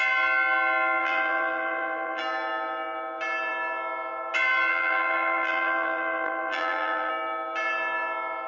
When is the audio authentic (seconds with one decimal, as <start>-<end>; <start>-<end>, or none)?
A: 0.0-1.0; 2.2-4.7; 7.1-8.5